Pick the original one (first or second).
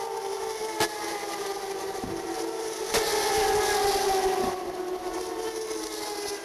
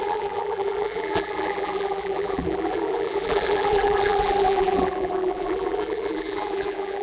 first